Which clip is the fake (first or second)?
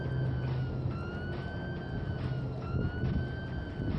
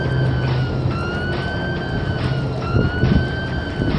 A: second